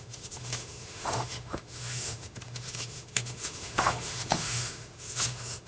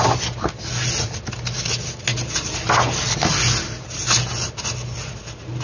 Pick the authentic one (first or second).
second